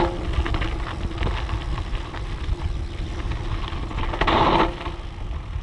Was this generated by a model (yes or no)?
no